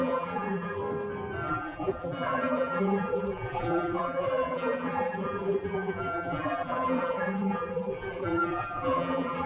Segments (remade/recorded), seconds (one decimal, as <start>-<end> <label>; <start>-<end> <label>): 0.0-0.8 remade; 0.8-1.5 recorded; 1.5-9.5 remade